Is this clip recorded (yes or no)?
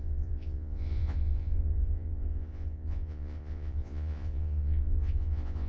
no